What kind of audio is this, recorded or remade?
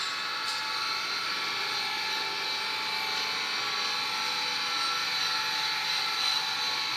recorded